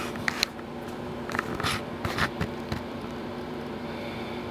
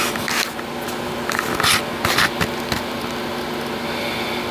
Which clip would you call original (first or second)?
second